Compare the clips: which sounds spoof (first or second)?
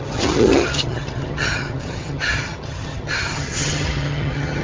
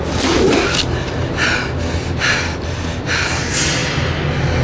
first